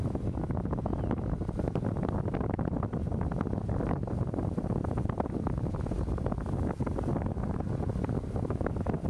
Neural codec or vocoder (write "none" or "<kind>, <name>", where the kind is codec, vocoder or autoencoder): none